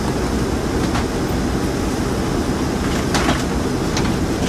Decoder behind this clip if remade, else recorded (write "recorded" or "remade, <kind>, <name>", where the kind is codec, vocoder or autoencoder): recorded